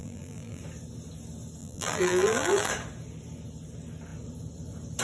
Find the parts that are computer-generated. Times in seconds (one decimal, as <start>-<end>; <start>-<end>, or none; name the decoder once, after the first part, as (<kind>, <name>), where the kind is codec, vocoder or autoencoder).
0.0-0.6 (vocoder, BigVGAN v2); 1.6-2.7